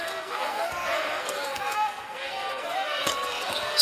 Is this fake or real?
fake